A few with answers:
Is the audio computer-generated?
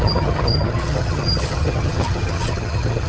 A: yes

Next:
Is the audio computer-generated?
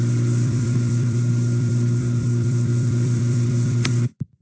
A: yes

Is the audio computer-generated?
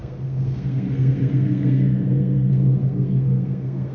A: yes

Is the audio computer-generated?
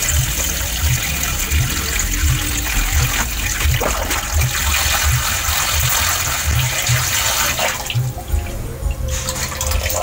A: no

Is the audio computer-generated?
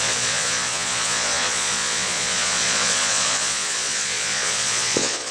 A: yes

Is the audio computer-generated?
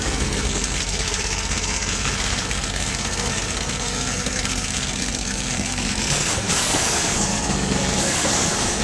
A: yes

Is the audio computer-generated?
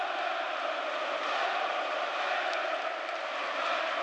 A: no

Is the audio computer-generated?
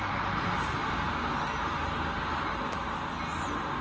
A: no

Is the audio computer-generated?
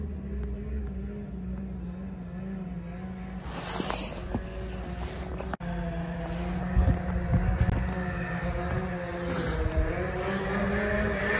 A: no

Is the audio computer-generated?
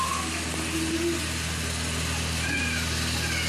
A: no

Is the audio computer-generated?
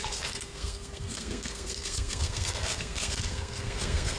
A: yes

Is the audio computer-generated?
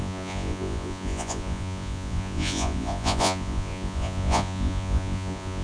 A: yes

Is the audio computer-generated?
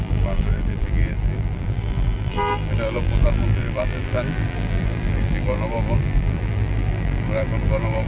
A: yes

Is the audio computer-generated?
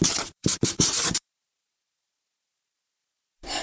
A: yes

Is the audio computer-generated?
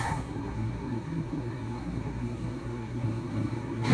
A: yes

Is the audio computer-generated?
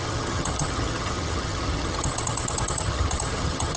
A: yes